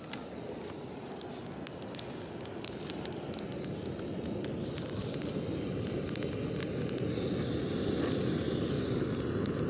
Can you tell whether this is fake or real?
real